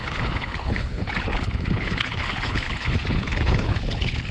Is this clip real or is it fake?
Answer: fake